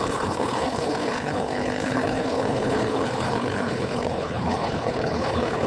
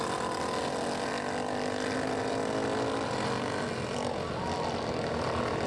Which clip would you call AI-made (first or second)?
first